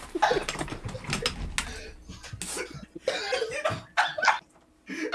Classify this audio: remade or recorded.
recorded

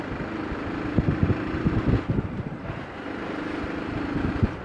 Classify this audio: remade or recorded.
recorded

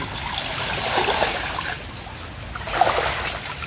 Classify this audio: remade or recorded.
recorded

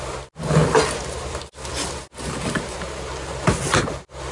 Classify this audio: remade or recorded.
recorded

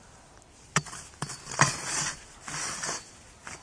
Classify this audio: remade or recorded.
recorded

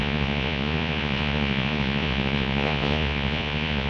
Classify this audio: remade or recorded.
remade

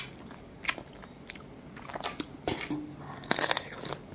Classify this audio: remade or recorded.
recorded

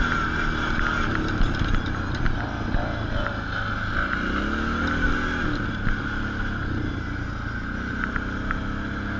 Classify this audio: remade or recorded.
recorded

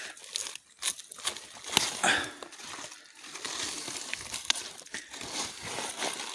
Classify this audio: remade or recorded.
recorded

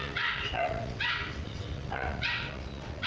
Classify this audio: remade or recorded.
remade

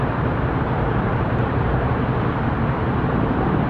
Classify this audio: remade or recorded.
remade